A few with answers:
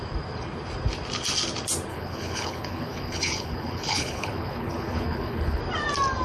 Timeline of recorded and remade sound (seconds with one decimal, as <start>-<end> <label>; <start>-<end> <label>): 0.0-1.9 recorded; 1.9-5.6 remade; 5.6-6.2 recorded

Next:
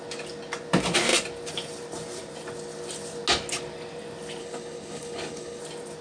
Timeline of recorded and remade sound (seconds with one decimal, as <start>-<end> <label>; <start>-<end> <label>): 0.0-4.4 recorded; 4.4-5.6 remade; 5.6-6.0 recorded

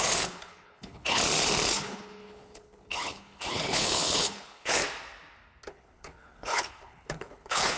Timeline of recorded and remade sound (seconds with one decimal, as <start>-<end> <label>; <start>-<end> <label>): 0.0-1.2 remade; 1.2-1.8 recorded; 1.8-4.8 remade; 4.8-5.7 recorded; 5.7-7.8 remade

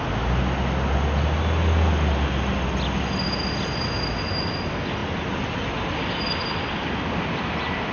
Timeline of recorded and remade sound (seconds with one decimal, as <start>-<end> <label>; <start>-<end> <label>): 0.0-7.9 recorded